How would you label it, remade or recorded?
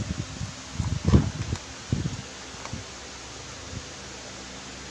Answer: recorded